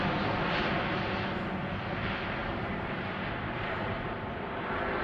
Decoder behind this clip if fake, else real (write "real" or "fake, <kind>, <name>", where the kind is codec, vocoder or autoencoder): real